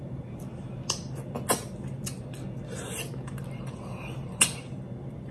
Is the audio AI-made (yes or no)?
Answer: no